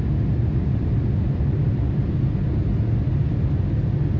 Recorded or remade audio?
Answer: recorded